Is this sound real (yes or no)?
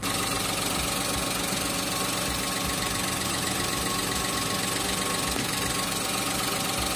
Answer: yes